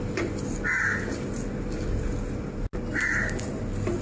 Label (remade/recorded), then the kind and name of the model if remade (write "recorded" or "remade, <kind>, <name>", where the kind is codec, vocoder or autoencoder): recorded